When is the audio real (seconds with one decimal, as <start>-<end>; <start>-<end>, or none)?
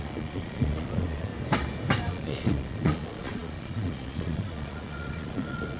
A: 1.3-2.1